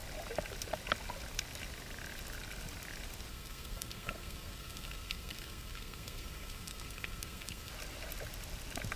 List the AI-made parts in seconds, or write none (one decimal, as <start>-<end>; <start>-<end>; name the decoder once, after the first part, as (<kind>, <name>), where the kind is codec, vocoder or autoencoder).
3.3-7.7 (codec, SNAC)